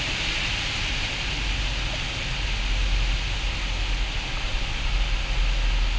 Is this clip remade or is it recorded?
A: recorded